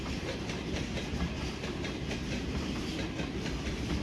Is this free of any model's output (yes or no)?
yes